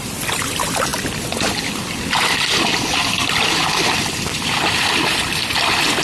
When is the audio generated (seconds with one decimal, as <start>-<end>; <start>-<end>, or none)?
none